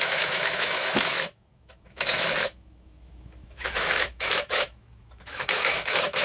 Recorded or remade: remade